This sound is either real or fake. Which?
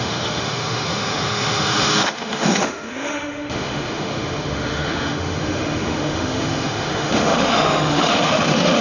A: fake